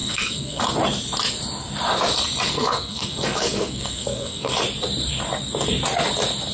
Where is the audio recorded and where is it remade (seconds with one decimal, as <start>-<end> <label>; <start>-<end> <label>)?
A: 0.0-0.6 remade; 0.6-2.5 recorded; 2.5-4.5 remade; 4.5-6.5 recorded